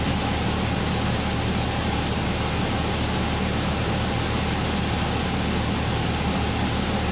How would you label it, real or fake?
real